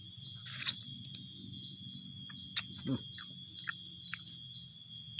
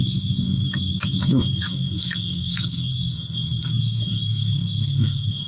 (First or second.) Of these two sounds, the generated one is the second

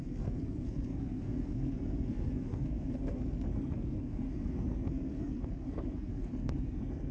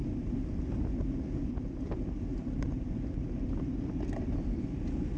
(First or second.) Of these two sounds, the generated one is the first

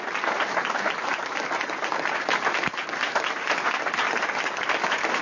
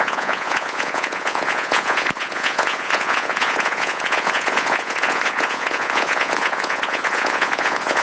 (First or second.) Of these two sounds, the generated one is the second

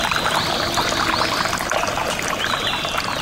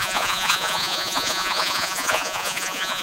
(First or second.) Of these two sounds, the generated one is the second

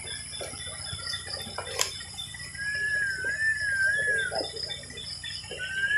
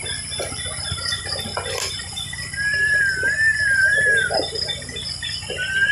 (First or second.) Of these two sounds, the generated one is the second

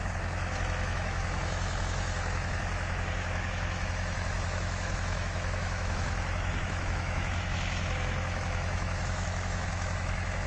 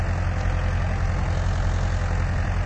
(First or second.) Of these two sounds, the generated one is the first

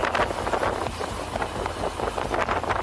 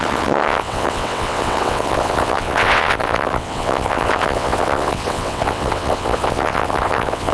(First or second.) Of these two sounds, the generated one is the second